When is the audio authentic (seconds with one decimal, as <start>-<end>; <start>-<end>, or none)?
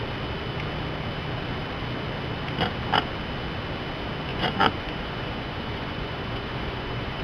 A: 0.0-4.3